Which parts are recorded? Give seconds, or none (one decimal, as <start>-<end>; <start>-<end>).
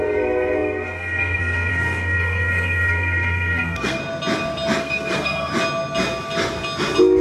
4.0-4.8; 5.5-7.2